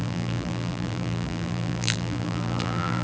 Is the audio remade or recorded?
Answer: remade